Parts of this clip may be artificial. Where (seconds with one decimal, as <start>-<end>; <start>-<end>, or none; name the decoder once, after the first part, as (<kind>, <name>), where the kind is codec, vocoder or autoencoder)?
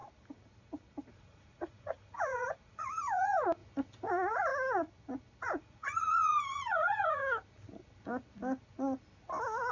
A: 1.1-3.6 (vocoder, Vocos); 4.1-4.5; 5.4-7.2